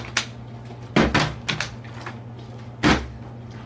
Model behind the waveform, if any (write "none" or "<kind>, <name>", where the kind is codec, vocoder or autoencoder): none